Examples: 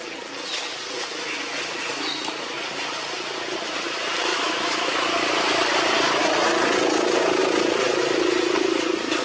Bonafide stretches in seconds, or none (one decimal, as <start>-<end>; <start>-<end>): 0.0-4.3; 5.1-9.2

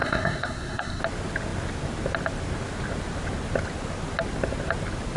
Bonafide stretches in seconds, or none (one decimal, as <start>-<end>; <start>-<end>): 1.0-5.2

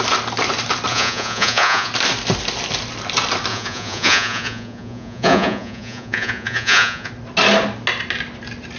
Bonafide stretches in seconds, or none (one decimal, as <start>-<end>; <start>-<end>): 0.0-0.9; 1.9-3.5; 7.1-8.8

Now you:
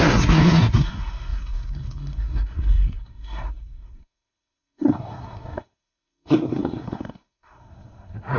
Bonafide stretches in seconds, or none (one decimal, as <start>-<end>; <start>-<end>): none

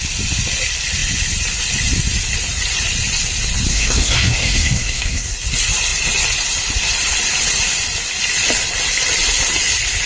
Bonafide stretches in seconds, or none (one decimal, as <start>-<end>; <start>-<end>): 0.0-3.7; 5.3-10.1

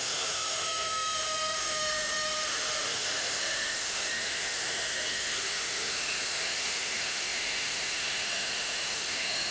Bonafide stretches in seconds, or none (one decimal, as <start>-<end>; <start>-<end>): none

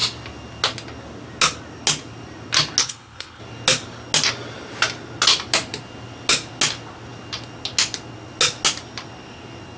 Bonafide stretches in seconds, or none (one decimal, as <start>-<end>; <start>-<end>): 0.0-2.8; 3.4-9.8

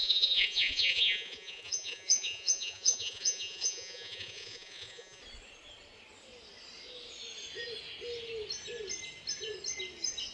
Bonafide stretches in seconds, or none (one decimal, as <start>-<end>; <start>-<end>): 5.2-10.3